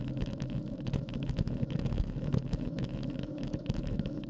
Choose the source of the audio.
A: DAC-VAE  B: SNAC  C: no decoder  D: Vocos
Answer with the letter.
A